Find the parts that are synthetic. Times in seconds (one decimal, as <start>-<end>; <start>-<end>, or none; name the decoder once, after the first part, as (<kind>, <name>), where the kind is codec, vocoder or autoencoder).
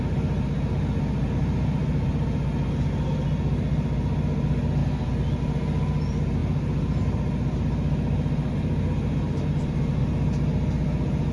none